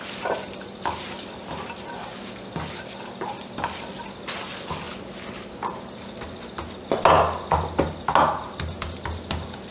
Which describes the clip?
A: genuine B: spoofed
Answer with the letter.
A